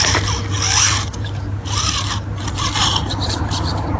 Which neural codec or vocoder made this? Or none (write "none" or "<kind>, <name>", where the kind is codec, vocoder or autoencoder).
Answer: none